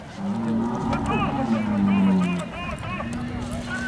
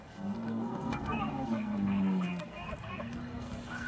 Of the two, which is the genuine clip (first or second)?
first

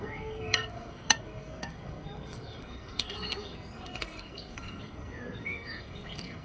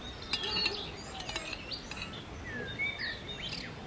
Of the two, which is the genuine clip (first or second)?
second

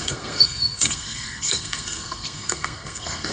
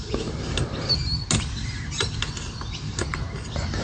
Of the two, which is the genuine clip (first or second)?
second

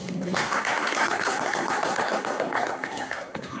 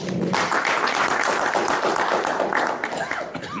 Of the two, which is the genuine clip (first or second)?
second